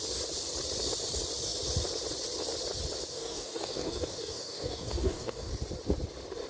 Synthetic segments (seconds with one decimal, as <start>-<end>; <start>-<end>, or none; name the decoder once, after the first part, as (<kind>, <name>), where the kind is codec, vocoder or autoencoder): 3.1-5.5 (codec, DAC)